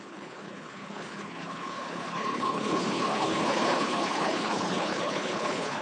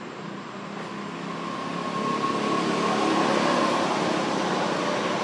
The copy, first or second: first